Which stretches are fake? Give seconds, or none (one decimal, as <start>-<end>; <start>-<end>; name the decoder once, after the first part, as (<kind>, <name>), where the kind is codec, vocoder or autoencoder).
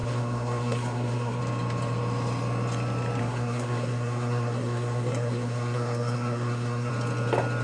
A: 0.0-1.4 (codec, SNAC); 3.2-6.9